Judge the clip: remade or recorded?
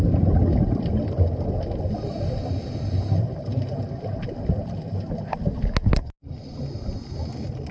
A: recorded